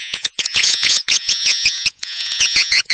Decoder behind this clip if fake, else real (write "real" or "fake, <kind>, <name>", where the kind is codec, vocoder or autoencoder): fake, vocoder, Vocos